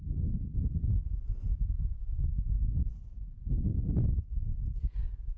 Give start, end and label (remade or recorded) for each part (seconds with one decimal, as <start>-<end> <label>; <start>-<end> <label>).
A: 0.0-5.4 recorded